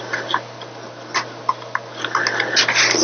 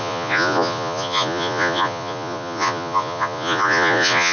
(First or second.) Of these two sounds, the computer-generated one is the second